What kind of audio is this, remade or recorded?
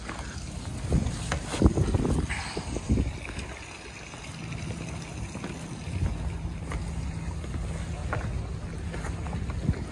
recorded